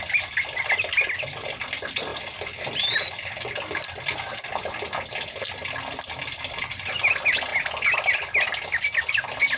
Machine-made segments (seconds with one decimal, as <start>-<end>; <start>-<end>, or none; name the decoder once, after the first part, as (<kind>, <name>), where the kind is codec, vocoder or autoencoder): none